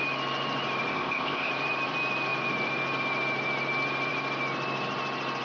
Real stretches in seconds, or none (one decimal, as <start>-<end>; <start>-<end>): 0.0-0.9; 1.5-5.4